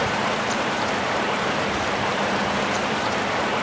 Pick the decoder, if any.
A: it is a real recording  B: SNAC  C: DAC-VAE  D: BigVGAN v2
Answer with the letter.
D